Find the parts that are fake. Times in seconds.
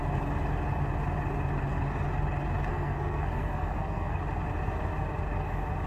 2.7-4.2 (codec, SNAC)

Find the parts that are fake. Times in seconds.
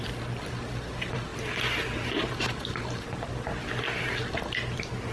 none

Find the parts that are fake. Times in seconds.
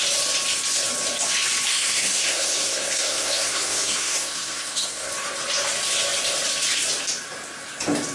1.7-5.1 (codec, SNAC)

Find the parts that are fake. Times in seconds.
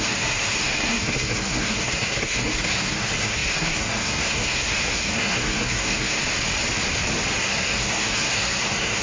0.0-6.2 (codec, SNAC); 7.4-9.0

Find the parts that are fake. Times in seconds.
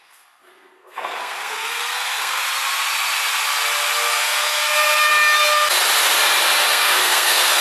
0.0-2.4 (codec, SNAC); 4.2-5.1; 6.7-7.6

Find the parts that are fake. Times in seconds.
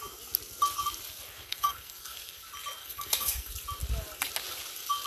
1.4-2.4 (codec, SNAC); 2.8-3.5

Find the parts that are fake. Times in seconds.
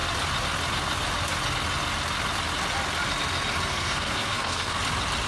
3.7-4.8 (codec, SNAC)